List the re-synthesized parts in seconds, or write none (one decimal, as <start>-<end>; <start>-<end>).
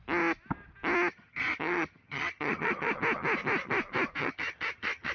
1.1-2.9; 4.2-5.1